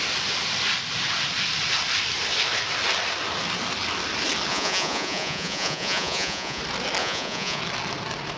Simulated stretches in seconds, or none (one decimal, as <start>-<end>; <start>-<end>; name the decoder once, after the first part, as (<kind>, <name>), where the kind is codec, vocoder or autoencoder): 4.5-6.6 (vocoder, Vocos); 7.0-7.6